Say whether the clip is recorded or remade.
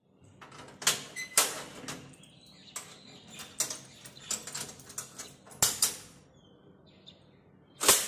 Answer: recorded